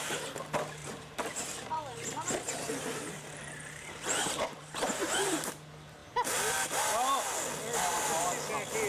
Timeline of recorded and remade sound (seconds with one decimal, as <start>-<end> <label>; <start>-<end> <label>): 0.0-0.8 recorded; 0.8-5.5 remade; 5.5-8.9 recorded